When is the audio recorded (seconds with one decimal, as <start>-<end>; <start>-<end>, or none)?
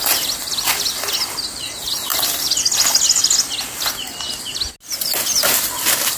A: 0.0-6.2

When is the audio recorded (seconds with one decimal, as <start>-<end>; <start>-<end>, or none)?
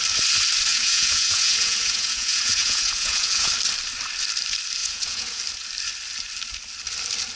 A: 0.0-0.7; 3.5-4.8; 5.4-7.4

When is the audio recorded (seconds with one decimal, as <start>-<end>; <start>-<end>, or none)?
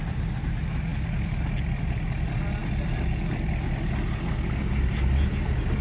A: 0.0-5.8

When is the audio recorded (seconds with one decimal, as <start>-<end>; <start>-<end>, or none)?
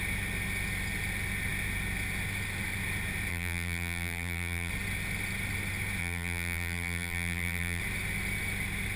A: 0.0-3.3; 4.7-6.0; 7.8-9.0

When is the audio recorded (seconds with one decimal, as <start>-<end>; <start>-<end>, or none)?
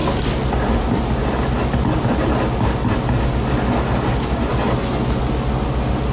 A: 0.0-6.1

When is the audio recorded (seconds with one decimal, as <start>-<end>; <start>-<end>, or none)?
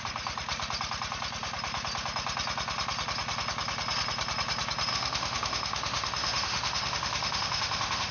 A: 0.0-4.9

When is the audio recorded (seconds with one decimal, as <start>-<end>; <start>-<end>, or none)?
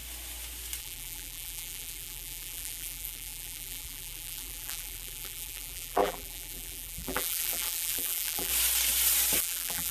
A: 0.0-0.8; 8.5-9.4